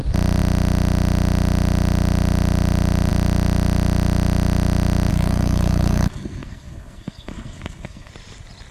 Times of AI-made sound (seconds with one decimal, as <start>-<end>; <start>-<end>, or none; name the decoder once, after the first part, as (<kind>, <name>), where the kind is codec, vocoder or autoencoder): 5.1-8.1 (codec, SNAC)